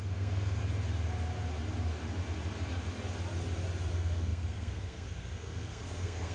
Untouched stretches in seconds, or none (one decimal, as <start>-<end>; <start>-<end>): 0.6-3.9